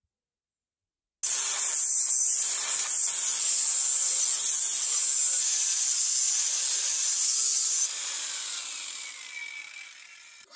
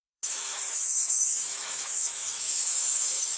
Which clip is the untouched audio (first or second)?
first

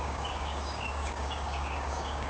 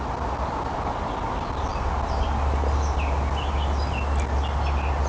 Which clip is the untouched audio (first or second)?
second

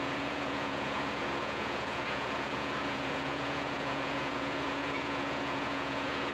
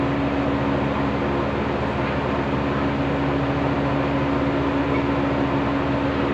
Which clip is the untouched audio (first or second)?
second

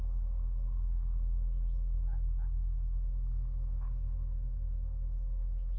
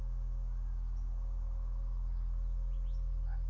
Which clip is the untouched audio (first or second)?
second